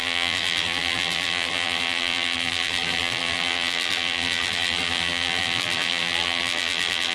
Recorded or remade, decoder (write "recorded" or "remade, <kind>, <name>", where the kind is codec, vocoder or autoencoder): remade, vocoder, BigVGAN v2